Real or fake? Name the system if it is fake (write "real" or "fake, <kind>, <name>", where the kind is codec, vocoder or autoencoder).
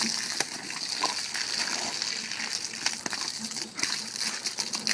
real